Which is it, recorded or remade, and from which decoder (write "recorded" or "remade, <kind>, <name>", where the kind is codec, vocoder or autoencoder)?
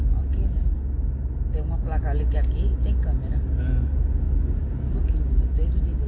recorded